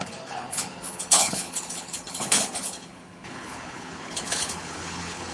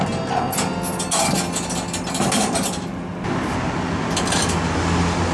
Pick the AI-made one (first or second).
first